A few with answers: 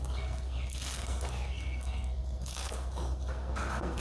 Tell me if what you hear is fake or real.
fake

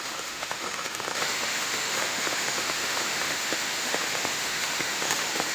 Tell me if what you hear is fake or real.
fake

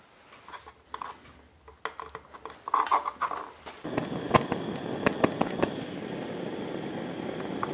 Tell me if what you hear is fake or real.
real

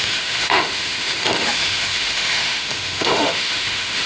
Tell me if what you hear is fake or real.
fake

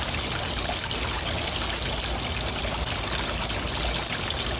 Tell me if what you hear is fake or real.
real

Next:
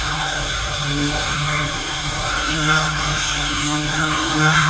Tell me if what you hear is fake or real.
fake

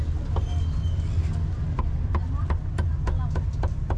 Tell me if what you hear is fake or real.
real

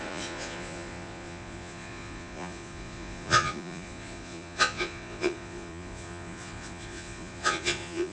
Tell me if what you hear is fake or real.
fake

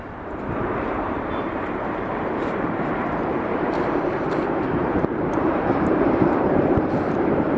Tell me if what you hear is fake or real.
fake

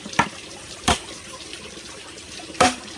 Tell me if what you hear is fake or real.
fake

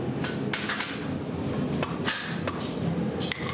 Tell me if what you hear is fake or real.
real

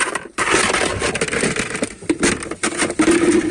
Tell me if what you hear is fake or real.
real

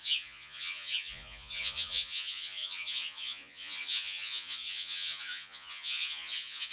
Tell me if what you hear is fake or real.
fake